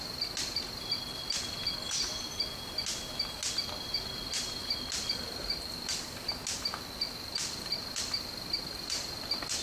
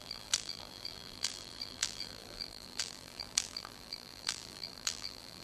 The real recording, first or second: first